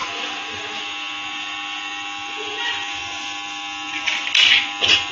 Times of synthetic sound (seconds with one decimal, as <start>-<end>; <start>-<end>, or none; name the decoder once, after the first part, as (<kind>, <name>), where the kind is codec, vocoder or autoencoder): 0.0-0.8 (autoencoder, DAC-VAE)